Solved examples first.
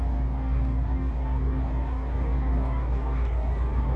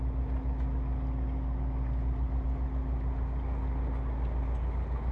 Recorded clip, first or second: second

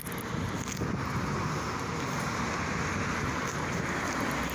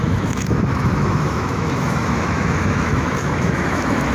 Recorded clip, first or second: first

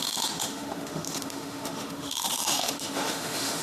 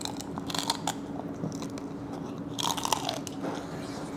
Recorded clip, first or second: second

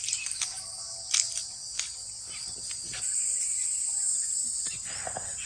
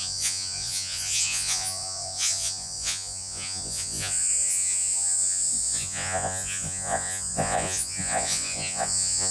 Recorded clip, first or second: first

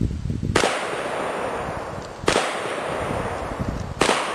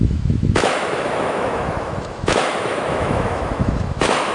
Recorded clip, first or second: first